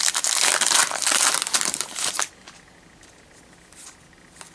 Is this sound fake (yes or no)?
no